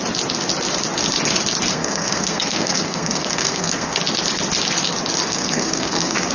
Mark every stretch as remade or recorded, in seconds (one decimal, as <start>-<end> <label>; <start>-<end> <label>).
0.0-1.7 recorded; 1.7-4.0 remade; 4.0-5.2 recorded; 5.2-6.3 remade